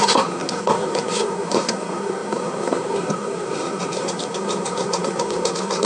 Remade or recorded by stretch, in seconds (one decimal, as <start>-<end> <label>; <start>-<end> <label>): 0.0-5.9 remade